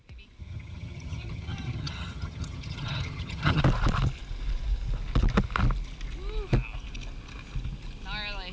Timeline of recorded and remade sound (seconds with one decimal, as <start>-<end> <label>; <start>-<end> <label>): 0.0-0.4 recorded; 0.4-3.6 remade; 3.6-8.5 recorded